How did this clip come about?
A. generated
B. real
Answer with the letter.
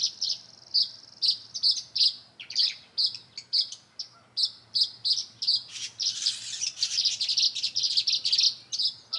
B